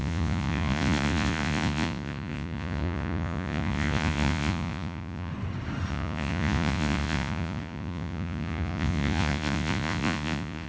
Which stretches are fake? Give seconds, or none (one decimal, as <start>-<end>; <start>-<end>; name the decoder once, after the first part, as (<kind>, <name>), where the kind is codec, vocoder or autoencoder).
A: 0.0-5.3 (vocoder, Vocos); 5.9-10.7